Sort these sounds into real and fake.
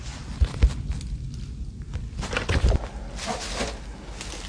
real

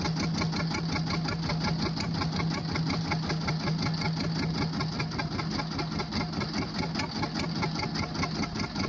real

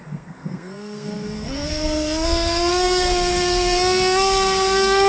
fake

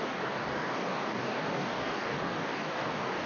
fake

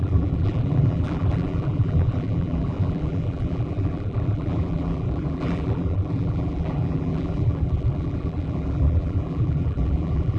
fake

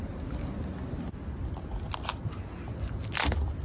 real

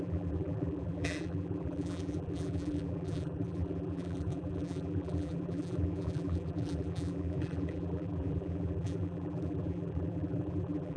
fake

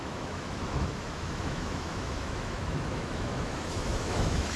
fake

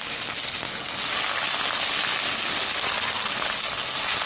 real